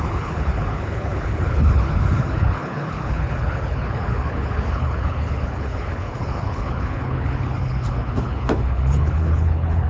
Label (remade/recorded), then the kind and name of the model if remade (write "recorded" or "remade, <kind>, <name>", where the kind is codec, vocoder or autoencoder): remade, codec, HILCodec